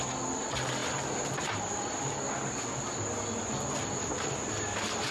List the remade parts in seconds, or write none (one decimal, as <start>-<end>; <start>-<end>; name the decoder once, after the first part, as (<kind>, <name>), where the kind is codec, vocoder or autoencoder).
none